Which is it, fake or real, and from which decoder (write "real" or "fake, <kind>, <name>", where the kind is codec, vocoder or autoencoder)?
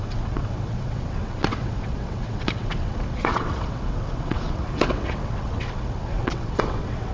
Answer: fake, vocoder, WaveNeXt